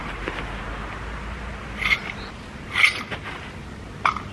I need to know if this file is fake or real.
real